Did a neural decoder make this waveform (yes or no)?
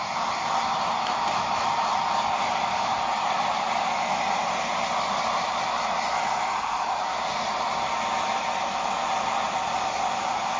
no